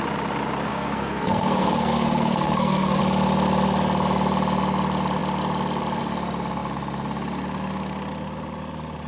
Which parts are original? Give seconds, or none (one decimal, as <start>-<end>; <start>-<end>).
0.0-0.7; 3.0-9.1